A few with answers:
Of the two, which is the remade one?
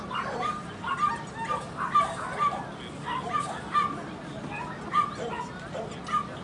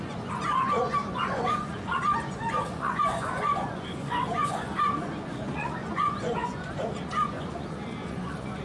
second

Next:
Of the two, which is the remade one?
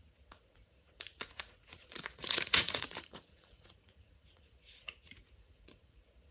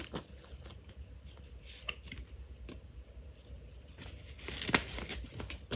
first